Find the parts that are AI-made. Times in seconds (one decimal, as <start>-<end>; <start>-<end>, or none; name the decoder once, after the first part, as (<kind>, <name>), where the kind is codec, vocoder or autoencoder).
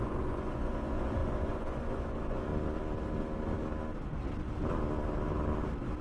0.0-2.5 (vocoder, Vocos)